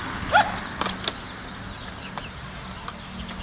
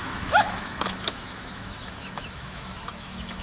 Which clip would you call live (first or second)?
first